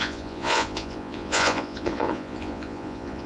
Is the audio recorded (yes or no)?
no